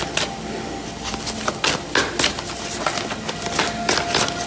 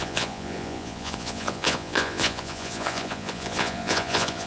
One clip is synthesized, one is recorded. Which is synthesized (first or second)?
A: second